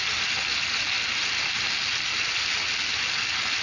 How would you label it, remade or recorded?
recorded